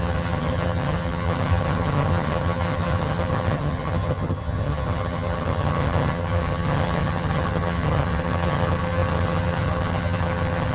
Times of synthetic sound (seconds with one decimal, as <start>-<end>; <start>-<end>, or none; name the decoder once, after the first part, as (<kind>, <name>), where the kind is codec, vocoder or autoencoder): 0.0-10.7 (vocoder, HiFi-GAN)